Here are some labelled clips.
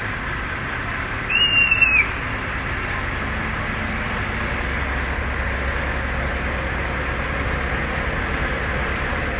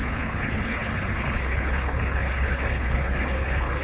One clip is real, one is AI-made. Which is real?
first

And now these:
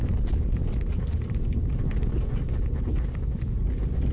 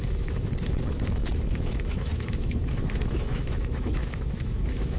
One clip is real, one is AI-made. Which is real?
first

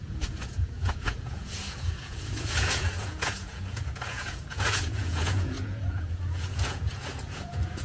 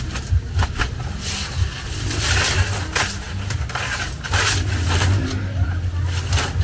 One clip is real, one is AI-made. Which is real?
second